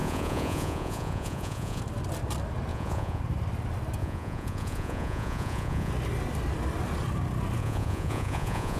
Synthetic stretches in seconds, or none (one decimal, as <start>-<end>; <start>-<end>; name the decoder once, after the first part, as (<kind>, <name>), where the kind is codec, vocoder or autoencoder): 0.0-1.8 (vocoder, Vocos); 2.7-3.2; 4.0-5.9; 7.6-8.8